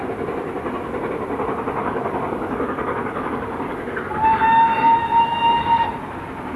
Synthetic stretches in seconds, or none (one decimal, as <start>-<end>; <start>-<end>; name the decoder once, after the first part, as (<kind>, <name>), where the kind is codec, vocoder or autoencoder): 1.8-5.8 (codec, DAC)